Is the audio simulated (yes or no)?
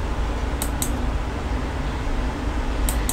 no